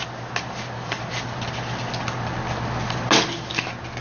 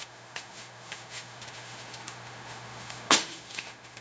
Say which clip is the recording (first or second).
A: first